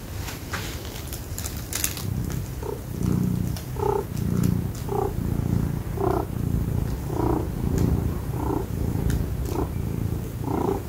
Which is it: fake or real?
real